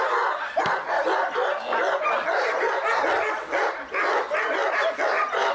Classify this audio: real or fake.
real